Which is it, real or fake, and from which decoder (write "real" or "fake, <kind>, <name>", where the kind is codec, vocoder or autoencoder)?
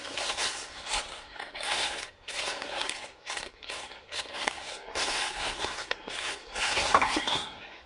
fake, codec, SNAC